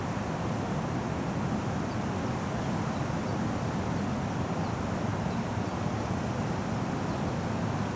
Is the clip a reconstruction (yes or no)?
no